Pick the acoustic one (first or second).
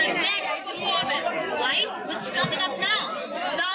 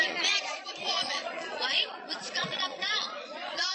first